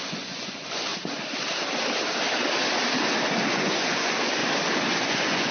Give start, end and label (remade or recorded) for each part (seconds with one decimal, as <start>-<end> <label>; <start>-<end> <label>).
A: 0.0-0.9 remade; 0.9-3.5 recorded; 3.5-4.4 remade; 4.4-4.9 recorded; 4.9-5.5 remade